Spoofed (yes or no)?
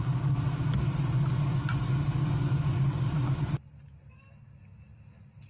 no